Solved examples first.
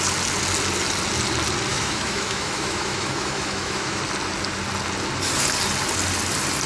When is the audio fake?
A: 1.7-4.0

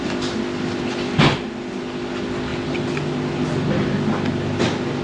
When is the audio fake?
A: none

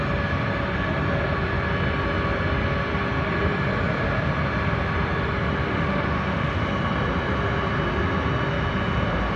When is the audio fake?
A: 5.7-6.6

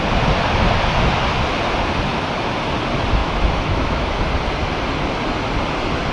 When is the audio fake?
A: 3.2-4.2